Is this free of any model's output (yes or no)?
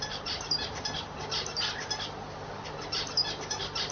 yes